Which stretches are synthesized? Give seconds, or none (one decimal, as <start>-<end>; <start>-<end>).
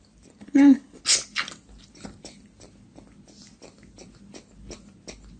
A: 0.4-1.0